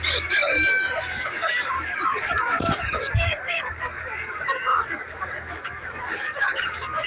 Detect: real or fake fake